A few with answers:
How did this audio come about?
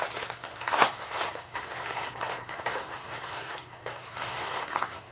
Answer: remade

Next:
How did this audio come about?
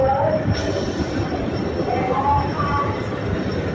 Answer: remade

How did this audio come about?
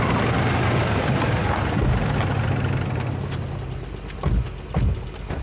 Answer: recorded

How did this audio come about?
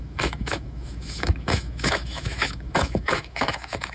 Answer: remade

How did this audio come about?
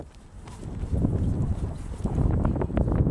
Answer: recorded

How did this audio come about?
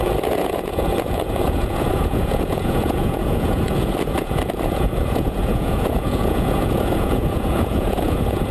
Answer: remade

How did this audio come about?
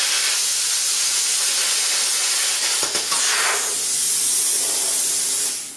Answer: recorded